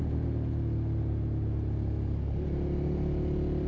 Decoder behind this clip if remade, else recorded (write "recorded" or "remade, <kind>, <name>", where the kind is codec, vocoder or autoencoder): recorded